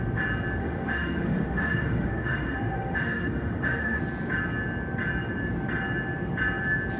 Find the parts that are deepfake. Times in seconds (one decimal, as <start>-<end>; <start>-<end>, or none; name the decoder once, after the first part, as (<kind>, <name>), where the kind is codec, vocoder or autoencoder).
0.6-4.0 (autoencoder, DAC-VAE)